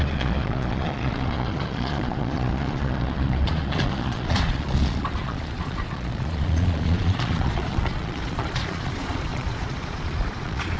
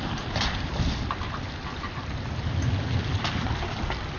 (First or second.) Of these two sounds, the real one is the second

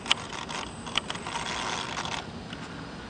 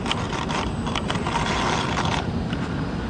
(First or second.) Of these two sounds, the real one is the first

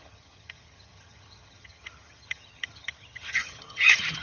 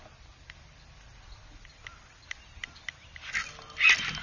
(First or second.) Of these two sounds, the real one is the second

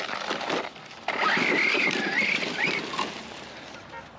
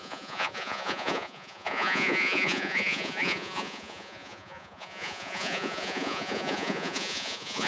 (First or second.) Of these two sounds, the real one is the first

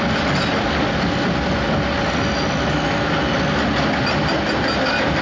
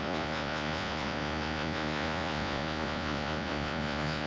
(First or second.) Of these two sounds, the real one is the first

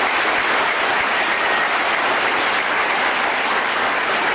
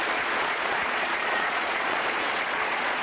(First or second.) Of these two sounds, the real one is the first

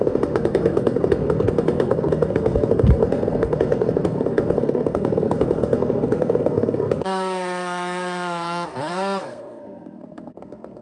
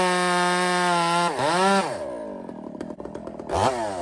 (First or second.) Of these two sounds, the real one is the second